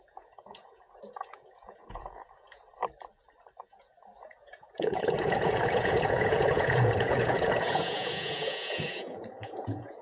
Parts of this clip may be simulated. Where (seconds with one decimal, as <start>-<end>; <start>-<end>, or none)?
0.0-2.6; 3.6-10.0